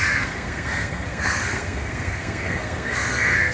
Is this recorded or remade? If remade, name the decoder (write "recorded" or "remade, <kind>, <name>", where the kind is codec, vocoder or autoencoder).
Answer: remade, codec, SNAC